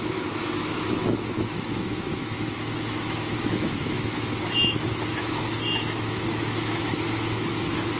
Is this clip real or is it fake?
fake